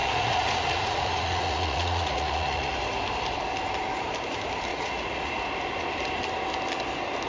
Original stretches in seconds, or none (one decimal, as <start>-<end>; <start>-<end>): 2.7-4.7; 5.3-7.3

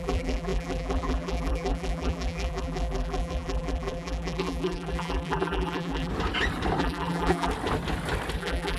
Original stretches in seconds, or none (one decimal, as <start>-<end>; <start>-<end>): 6.1-6.8; 7.5-8.4

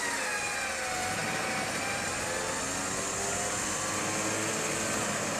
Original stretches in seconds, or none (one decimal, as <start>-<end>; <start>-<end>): 0.0-5.4